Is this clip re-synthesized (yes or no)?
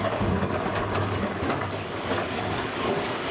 yes